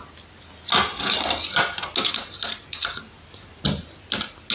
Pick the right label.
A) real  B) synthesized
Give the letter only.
A